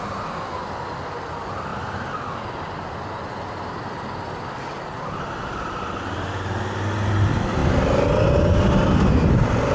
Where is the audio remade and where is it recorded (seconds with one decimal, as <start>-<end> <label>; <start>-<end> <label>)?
0.0-9.7 recorded